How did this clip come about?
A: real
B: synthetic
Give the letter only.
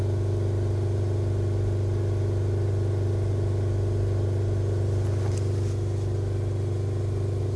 A